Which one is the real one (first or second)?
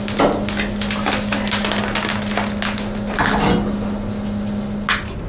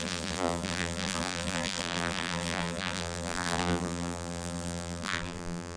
first